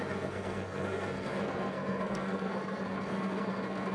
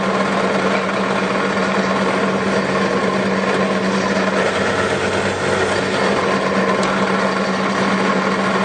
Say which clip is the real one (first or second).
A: second